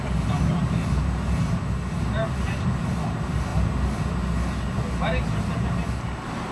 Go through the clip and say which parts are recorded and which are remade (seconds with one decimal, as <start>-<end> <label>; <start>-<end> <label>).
0.0-6.5 recorded